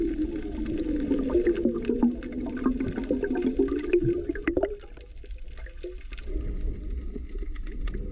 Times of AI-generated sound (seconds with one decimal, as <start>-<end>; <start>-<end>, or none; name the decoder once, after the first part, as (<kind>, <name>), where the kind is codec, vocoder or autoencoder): none